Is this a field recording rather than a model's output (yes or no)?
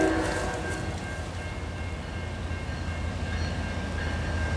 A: yes